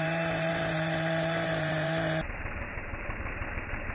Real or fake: fake